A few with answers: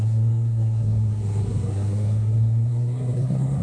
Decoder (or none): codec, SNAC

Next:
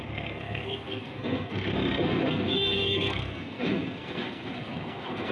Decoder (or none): codec, SNAC